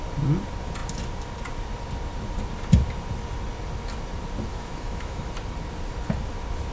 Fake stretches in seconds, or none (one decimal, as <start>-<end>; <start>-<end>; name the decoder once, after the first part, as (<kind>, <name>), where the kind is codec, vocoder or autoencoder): 4.5-5.3 (autoencoder, DAC-VAE)